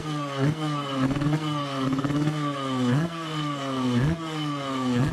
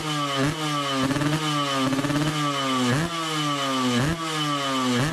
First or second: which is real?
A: second